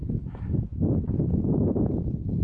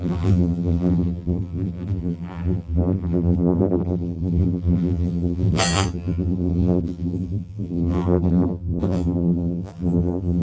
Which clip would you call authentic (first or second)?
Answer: first